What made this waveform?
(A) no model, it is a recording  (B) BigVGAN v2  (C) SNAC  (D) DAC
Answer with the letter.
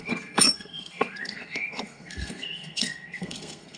C